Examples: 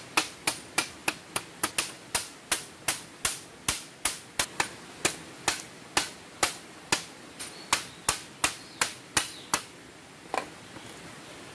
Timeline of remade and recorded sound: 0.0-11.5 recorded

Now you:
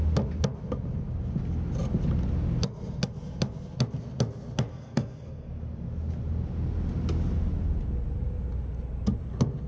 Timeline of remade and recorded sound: 0.0-4.7 recorded; 4.7-5.5 remade; 5.5-9.7 recorded

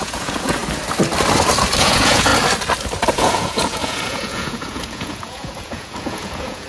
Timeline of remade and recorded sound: 0.0-0.6 remade; 0.6-1.8 recorded; 1.8-2.3 remade; 2.3-3.1 recorded; 3.1-6.7 remade

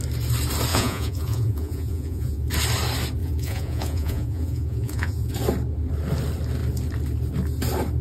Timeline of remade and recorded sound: 0.0-0.7 recorded; 0.7-2.5 remade; 2.5-3.2 recorded; 3.2-5.3 remade; 5.3-8.0 recorded

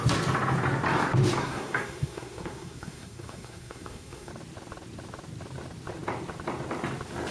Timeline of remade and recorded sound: 0.0-1.4 recorded; 1.4-4.3 remade; 4.3-7.3 recorded

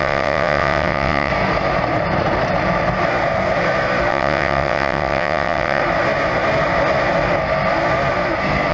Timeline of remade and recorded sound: 0.0-1.3 remade; 1.3-4.1 recorded; 4.1-5.8 remade; 5.8-8.7 recorded

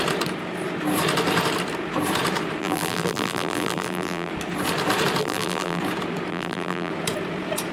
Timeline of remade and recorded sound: 0.0-2.6 recorded; 2.6-4.3 remade; 4.3-5.2 recorded; 5.2-5.8 remade; 5.8-6.3 recorded; 6.3-6.9 remade; 6.9-7.7 recorded

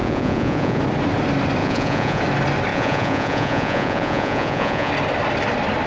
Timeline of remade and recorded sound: 0.0-0.8 remade; 0.8-1.6 recorded; 1.6-2.2 remade; 2.2-2.7 recorded; 2.7-4.9 remade; 4.9-5.9 recorded